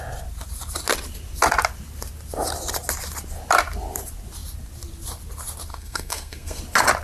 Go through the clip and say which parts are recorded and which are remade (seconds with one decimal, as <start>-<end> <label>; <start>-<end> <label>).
0.0-5.7 recorded; 5.7-6.6 remade; 6.6-7.0 recorded